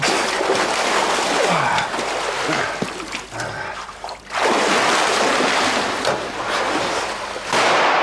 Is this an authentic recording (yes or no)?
yes